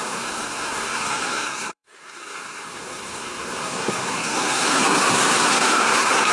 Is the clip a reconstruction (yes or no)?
yes